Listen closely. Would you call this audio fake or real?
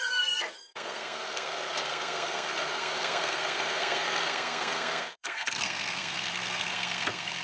fake